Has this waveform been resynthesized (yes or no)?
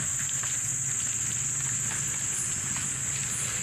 no